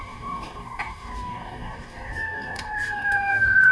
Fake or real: fake